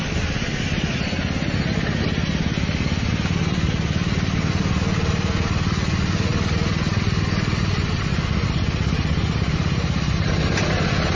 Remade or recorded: recorded